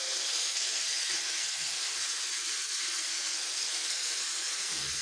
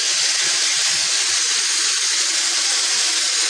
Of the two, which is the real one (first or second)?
second